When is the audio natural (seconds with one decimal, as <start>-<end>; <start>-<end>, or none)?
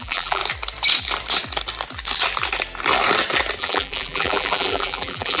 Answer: 0.4-3.6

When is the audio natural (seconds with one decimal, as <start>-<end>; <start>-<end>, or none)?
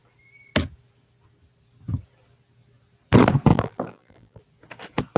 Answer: 0.0-3.5; 4.4-5.2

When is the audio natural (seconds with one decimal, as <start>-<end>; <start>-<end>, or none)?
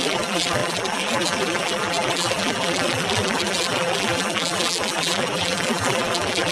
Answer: none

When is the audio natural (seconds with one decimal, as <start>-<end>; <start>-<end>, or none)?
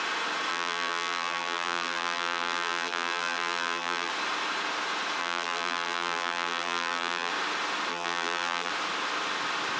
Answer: 0.0-0.5; 4.1-5.2; 7.3-7.9; 8.7-9.8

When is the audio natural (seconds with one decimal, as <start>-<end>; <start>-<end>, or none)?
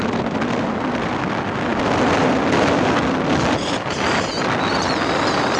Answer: 0.0-5.6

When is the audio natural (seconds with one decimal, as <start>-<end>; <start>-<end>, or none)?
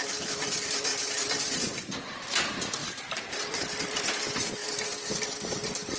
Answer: 0.0-0.9; 1.8-2.8; 3.6-6.0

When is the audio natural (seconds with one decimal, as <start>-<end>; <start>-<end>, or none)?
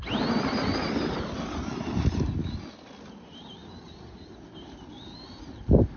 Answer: 0.0-6.0